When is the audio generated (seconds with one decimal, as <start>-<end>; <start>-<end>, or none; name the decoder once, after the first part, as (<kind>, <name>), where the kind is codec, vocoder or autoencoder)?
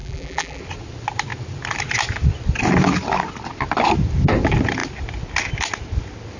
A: 0.0-0.6 (vocoder, BigVGAN v2)